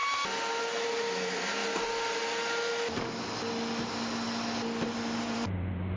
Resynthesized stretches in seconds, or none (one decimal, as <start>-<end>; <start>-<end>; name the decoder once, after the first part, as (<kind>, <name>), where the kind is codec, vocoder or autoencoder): 0.6-1.6 (vocoder, BigVGAN v2); 5.2-6.0